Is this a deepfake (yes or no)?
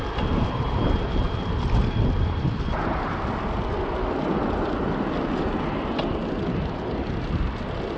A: no